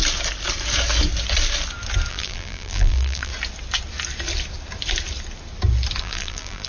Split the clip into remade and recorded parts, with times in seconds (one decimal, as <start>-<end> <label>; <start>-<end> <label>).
0.0-2.1 recorded; 2.1-3.3 remade; 3.3-6.0 recorded; 6.0-6.7 remade